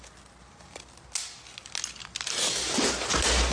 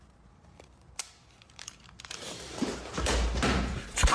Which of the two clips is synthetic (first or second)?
second